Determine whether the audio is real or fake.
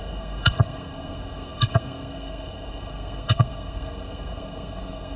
fake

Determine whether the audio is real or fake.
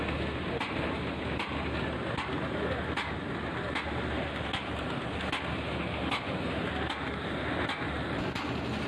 real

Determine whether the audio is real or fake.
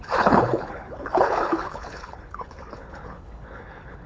fake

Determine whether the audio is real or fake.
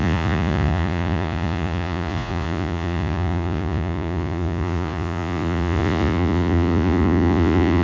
fake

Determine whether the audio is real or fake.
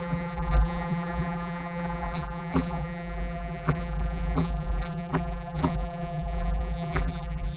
fake